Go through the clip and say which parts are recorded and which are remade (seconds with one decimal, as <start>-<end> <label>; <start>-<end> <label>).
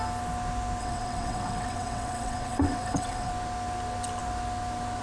0.0-0.8 recorded; 0.8-3.3 remade; 3.3-5.0 recorded